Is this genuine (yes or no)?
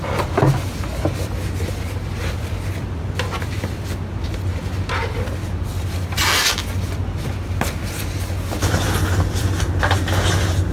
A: yes